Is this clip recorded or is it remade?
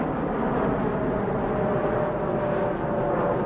recorded